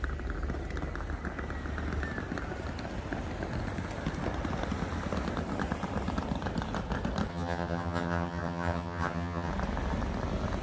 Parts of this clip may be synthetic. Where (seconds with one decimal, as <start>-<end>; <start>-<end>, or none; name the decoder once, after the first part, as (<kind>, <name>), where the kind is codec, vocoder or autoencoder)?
7.3-9.5 (vocoder, HiFi-GAN)